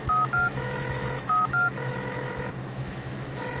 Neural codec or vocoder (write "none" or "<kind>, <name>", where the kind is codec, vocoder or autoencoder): autoencoder, DAC-VAE